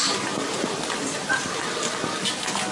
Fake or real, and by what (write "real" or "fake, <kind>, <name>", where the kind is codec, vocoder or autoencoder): real